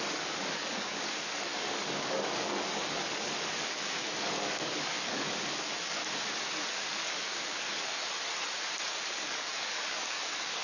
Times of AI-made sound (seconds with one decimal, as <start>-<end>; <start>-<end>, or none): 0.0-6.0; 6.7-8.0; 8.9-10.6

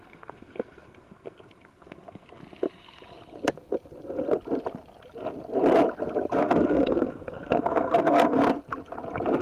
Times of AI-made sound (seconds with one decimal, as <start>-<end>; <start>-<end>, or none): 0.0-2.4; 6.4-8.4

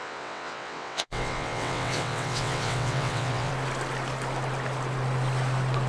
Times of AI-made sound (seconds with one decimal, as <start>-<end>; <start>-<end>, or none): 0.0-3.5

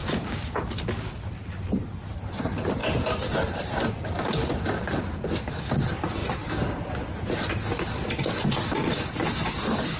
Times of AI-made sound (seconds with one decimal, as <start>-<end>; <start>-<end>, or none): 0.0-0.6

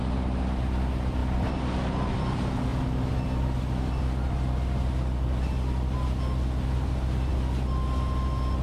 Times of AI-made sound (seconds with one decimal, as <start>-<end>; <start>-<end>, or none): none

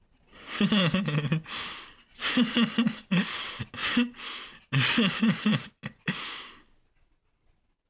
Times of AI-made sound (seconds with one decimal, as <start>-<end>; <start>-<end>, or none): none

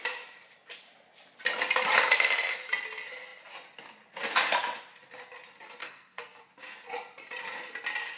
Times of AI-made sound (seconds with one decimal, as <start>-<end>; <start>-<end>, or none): 5.8-6.4